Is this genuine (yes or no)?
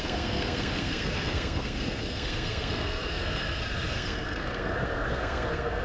no